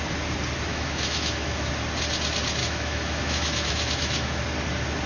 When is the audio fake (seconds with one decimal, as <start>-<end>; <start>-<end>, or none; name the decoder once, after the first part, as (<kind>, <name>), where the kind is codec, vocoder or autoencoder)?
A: 0.7-1.7 (autoencoder, DAC-VAE); 2.6-4.4